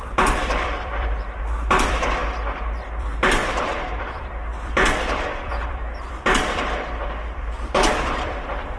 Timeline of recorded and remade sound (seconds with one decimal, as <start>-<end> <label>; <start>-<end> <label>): 0.0-2.2 remade; 2.2-3.0 recorded; 3.0-3.4 remade; 3.4-4.0 recorded; 4.0-8.8 remade